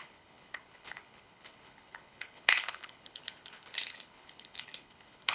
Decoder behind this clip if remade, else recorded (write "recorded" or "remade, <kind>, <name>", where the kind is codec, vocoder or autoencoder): remade, codec, HILCodec